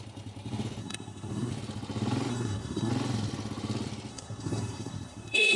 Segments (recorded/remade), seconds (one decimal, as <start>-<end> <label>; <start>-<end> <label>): 0.0-0.8 recorded; 0.8-1.5 remade; 1.5-2.3 recorded; 2.3-2.9 remade; 2.9-4.1 recorded; 4.1-5.6 remade